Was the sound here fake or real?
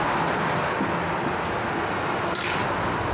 real